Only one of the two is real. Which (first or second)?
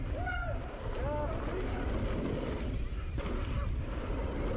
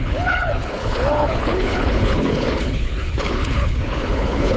first